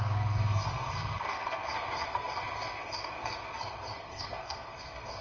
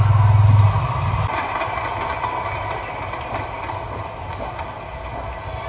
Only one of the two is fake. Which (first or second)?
first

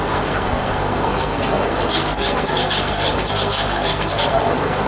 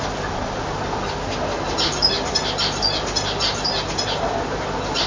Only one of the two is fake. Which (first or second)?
first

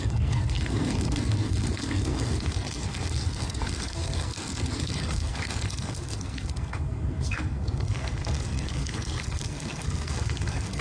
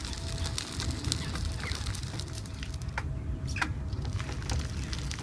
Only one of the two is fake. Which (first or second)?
first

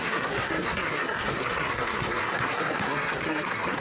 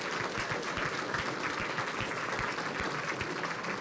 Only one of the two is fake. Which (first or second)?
first